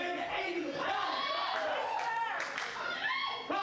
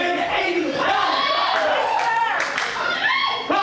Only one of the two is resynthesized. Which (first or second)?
second